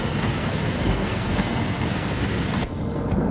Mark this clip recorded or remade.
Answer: remade